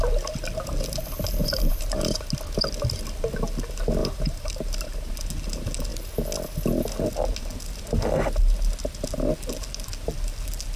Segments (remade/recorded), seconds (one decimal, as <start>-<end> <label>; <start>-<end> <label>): 0.0-1.4 recorded; 1.4-2.2 remade; 2.2-4.0 recorded; 4.0-5.1 remade; 5.1-10.8 recorded